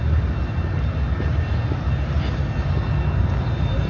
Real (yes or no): yes